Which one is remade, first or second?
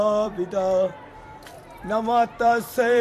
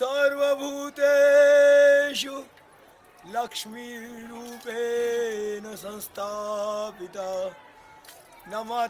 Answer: first